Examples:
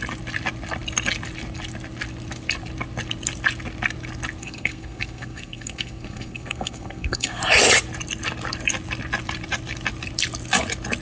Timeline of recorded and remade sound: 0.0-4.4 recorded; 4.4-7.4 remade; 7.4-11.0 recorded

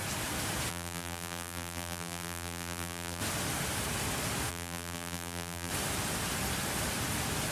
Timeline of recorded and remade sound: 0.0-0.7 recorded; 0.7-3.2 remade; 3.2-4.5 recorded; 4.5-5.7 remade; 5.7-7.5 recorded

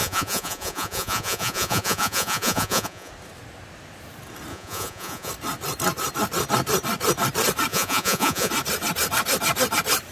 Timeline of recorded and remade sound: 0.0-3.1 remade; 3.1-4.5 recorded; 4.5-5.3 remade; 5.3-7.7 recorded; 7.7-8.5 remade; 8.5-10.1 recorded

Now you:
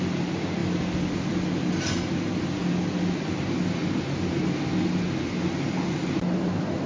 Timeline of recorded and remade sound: 0.0-6.9 recorded

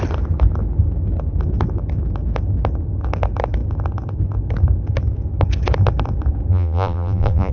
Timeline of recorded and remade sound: 0.0-6.5 recorded; 6.5-7.5 remade

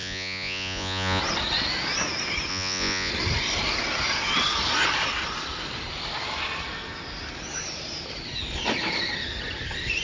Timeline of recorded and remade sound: 0.0-1.2 remade; 1.2-2.5 recorded; 2.5-3.1 remade; 3.1-10.0 recorded

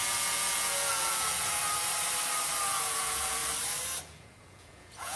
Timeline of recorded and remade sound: 0.0-1.9 remade; 1.9-2.7 recorded; 2.7-3.4 remade; 3.4-4.0 recorded; 4.0-5.2 remade

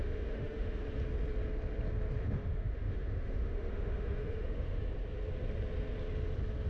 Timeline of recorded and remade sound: 0.0-0.8 remade; 0.8-2.2 recorded; 2.2-4.8 remade; 4.8-6.7 recorded